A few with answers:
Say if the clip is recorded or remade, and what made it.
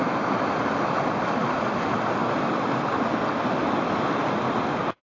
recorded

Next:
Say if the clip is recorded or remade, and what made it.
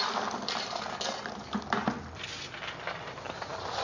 recorded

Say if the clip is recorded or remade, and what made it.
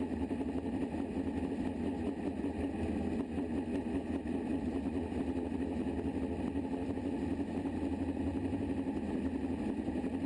recorded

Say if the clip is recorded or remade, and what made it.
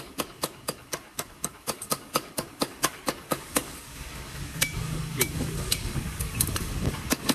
remade, codec, DAC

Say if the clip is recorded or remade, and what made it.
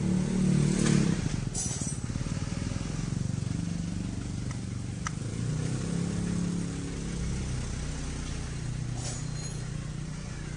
recorded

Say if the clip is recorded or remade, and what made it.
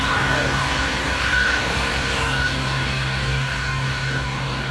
remade, codec, DAC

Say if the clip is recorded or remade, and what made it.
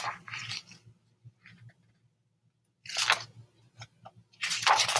recorded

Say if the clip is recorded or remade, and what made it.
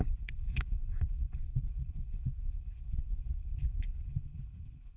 remade, codec, HILCodec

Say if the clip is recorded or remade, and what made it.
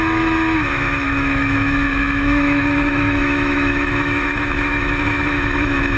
remade, autoencoder, DAC-VAE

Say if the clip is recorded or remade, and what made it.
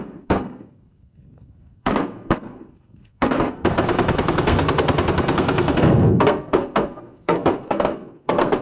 remade, codec, SNAC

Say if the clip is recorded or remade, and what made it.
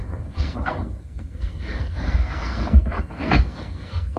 remade, codec, SNAC